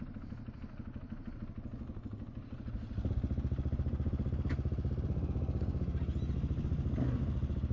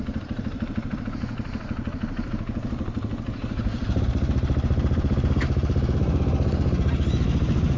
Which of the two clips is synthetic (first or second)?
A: second